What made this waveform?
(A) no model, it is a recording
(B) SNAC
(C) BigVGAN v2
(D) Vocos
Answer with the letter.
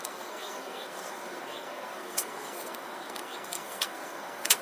B